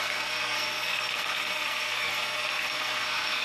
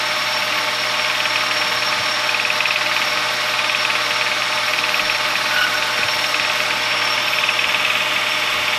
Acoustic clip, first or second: second